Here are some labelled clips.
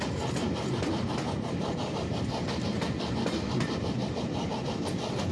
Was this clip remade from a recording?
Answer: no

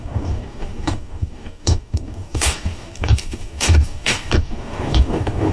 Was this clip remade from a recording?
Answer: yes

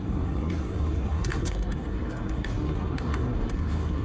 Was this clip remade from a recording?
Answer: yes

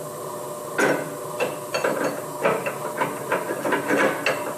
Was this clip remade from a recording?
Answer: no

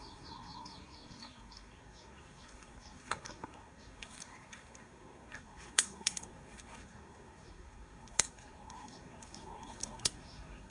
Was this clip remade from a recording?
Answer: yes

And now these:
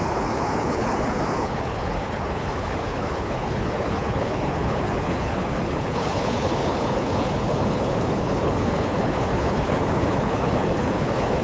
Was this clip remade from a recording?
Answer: yes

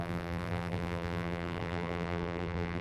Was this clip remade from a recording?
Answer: yes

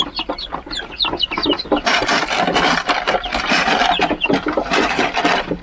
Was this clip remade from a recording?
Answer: yes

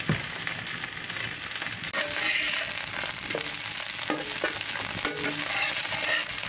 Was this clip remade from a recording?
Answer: no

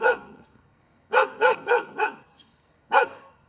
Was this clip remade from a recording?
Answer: yes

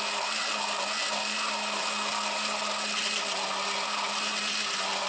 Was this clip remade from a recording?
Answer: no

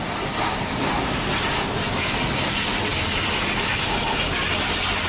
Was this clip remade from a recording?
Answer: no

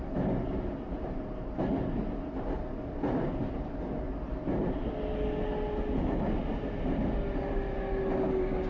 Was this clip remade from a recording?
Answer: no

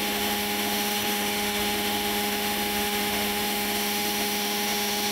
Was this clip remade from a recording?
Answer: yes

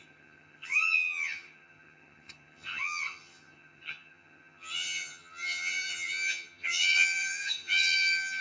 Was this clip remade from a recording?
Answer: yes